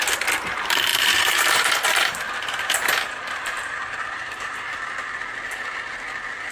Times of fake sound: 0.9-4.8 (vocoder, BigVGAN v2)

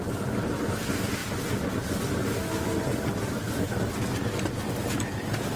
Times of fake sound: none

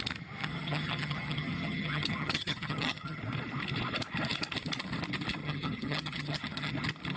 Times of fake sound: 0.4-3.2 (vocoder, HiFi-GAN); 5.4-6.7

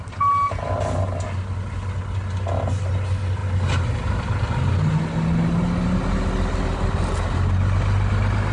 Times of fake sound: none

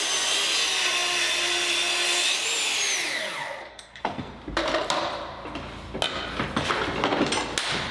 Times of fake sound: 3.7-4.3 (codec, SNAC)

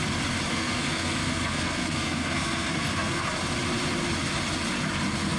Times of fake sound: 0.5-3.2 (codec, SNAC)

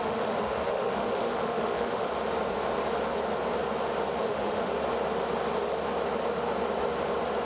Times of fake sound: 0.0-2.1 (autoencoder, DAC-VAE); 4.2-4.7